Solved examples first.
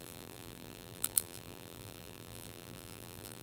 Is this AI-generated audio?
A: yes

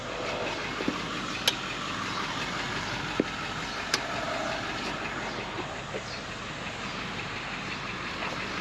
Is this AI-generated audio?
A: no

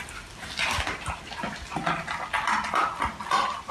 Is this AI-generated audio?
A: no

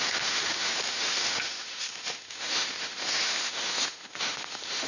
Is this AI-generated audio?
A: yes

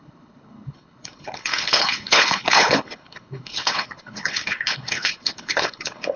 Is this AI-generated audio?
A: yes